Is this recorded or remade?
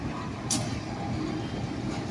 recorded